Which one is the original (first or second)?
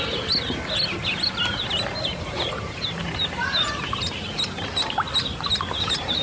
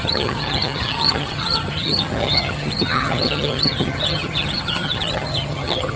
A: first